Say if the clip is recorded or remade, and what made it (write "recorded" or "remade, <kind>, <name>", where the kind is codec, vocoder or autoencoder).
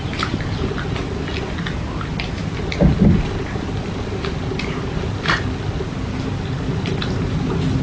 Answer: recorded